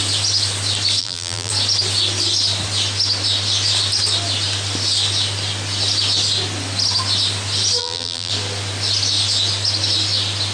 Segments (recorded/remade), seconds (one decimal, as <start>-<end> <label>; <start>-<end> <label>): 0.0-1.0 recorded; 1.0-1.5 remade; 1.5-7.8 recorded; 7.8-8.3 remade; 8.3-10.5 recorded